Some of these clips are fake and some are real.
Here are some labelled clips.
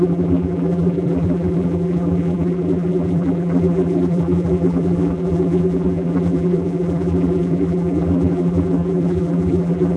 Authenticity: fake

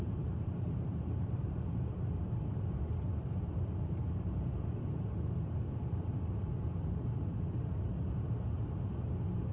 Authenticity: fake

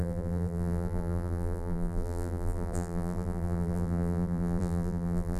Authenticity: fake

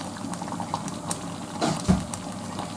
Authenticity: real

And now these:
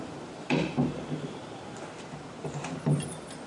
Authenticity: fake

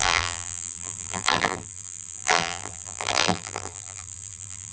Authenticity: fake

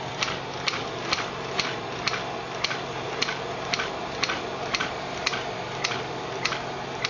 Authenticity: real